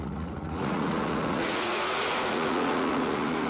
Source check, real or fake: fake